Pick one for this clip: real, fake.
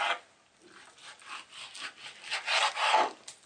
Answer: real